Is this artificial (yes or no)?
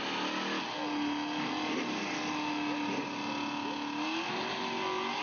no